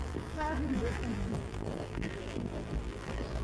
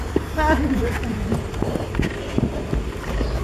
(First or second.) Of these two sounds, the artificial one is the first